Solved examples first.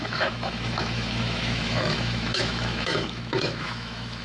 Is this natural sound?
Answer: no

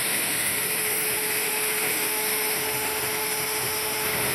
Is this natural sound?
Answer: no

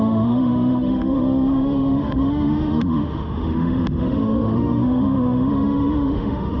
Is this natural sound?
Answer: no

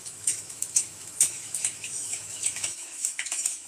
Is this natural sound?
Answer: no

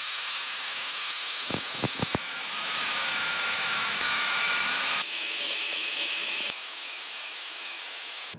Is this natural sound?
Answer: no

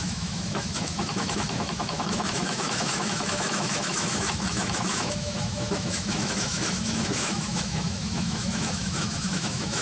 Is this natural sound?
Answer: no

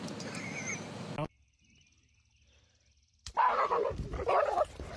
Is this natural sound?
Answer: yes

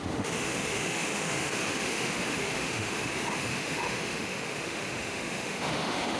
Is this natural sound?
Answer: no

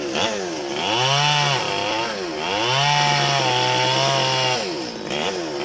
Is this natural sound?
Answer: yes